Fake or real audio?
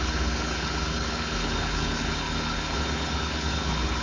fake